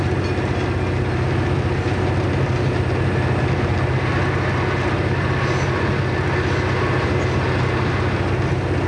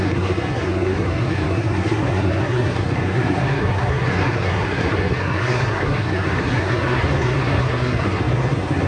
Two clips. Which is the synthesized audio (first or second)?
second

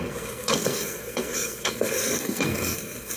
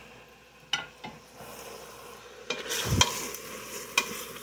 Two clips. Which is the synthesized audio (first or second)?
first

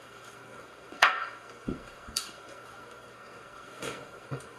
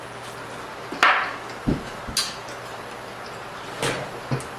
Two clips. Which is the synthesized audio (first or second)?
first